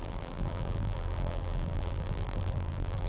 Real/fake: fake